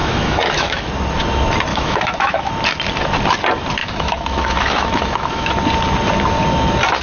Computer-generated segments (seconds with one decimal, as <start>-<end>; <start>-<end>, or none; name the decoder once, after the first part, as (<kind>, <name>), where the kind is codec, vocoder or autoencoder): 0.0-0.9 (autoencoder, DAC-VAE); 1.7-2.5; 3.8-5.5